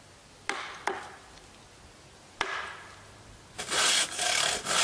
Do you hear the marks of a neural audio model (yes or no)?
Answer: no